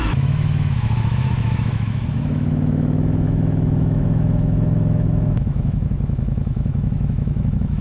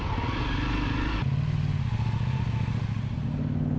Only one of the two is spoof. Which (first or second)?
first